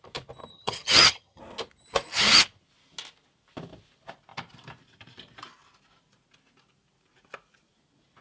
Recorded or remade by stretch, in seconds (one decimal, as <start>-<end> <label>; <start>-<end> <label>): 0.0-0.5 recorded; 0.5-1.4 remade; 1.4-8.2 recorded